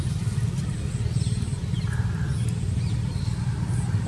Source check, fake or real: real